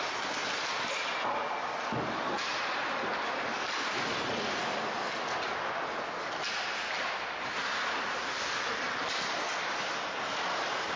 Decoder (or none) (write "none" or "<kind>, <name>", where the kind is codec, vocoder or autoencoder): none